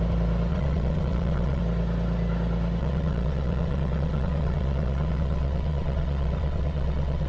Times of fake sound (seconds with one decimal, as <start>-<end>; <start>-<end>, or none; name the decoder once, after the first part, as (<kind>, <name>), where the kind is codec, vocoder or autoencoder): 0.5-1.6 (vocoder, WaveNeXt); 2.8-7.3